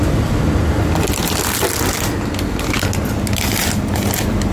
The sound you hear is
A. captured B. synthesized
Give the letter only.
A